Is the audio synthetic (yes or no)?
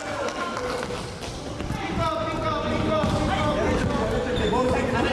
no